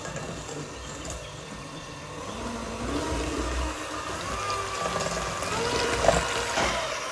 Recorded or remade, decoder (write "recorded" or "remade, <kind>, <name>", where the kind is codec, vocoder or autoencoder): recorded